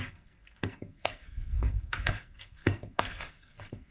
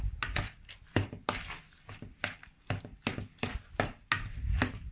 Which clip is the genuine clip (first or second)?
second